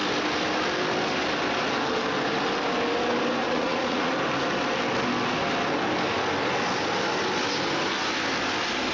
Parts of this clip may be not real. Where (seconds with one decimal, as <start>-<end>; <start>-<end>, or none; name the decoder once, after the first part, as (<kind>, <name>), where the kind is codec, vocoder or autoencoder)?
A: 3.4-4.1 (vocoder, Vocos)